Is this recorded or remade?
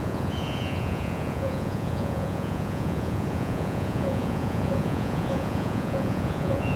remade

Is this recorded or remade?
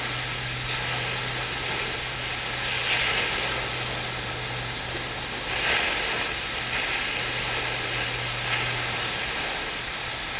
recorded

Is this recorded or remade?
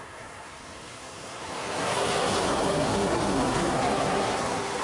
remade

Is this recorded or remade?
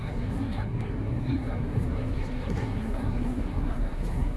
remade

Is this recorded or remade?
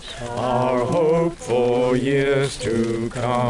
recorded